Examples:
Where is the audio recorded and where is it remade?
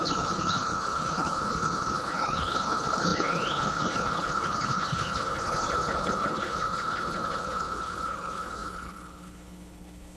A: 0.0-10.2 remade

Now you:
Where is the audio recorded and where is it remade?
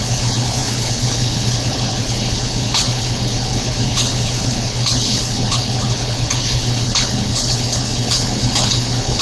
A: 0.0-9.2 remade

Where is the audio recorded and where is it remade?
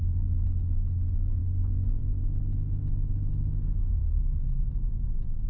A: 0.0-5.5 recorded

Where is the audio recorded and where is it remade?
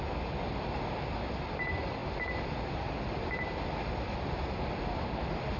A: 0.0-5.6 recorded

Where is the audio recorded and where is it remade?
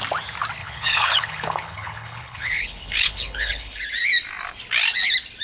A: 0.0-0.6 recorded; 0.6-3.8 remade; 3.8-5.4 recorded